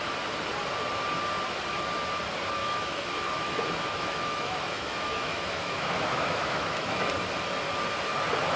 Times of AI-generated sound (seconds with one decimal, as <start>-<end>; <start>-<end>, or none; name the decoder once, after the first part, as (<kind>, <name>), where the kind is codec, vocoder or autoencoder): 2.6-7.1 (autoencoder, DAC-VAE)